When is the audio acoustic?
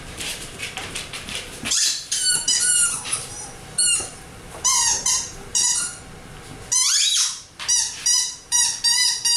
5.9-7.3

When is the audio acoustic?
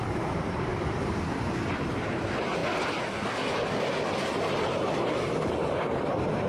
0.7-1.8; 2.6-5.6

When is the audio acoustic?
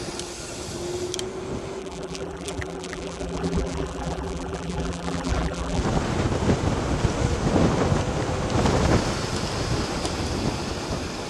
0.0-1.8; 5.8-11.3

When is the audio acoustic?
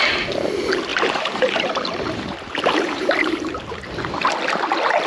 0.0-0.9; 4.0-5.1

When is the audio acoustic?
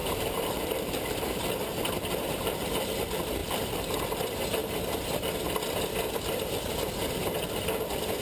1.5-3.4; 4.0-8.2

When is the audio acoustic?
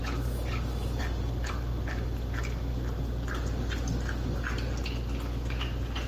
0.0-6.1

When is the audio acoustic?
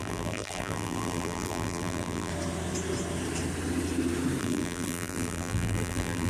2.3-4.4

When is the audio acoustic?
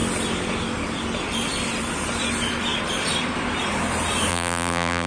0.0-4.3